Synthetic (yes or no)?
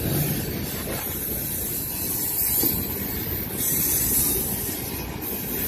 no